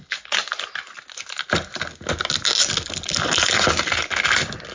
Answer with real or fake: real